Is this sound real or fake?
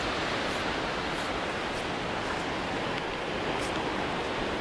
real